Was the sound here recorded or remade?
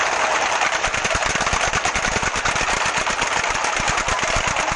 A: recorded